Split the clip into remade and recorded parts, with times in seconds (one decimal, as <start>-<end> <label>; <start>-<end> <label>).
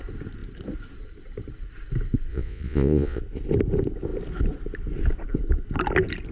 0.0-2.3 recorded; 2.3-3.2 remade; 3.2-6.3 recorded